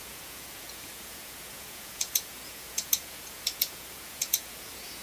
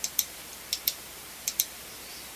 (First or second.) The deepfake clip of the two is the first